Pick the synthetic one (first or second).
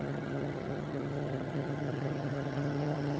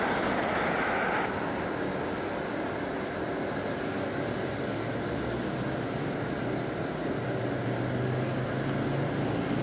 first